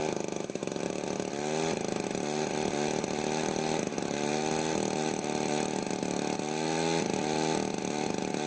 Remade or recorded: recorded